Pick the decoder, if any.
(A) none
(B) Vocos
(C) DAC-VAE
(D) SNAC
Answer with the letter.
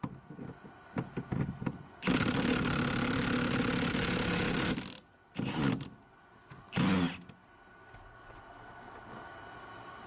A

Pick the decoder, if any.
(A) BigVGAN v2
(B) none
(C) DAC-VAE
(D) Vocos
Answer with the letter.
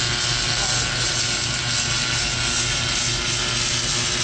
B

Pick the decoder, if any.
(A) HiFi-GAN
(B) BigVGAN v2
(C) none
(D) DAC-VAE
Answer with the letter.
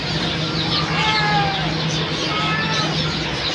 C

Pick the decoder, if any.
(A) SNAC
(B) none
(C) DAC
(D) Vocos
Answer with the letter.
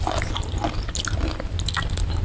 B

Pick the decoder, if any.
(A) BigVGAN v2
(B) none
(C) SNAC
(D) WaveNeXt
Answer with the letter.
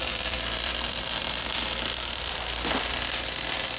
A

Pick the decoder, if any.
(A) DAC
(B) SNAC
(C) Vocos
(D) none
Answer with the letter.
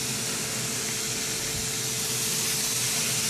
D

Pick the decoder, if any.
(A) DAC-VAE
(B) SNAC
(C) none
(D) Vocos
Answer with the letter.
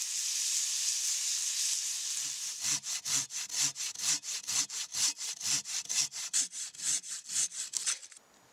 C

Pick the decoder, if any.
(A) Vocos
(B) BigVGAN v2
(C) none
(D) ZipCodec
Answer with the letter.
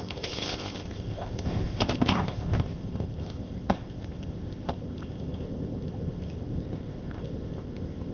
D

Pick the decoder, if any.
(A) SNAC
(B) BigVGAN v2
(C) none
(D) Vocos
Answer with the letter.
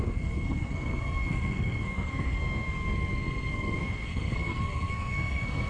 A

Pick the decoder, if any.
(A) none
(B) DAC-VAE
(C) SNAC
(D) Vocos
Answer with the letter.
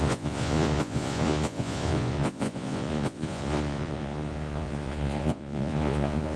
D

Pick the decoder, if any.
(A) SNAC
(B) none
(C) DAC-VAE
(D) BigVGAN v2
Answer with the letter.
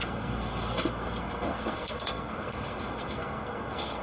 A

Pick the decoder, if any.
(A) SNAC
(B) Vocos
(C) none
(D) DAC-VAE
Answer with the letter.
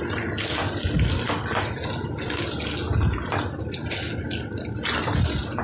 C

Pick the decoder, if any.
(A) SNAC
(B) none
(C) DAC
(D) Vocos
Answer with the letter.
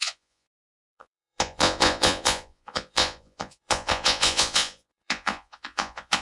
D